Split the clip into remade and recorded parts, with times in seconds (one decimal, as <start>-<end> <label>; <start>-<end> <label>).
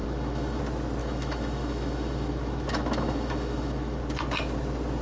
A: 0.0-0.6 remade; 0.6-1.0 recorded; 1.0-4.0 remade; 4.0-5.0 recorded